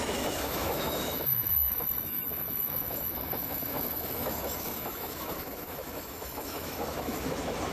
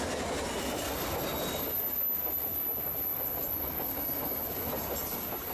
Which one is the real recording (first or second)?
second